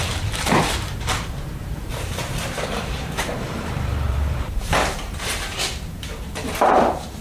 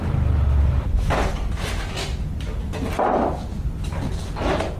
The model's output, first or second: first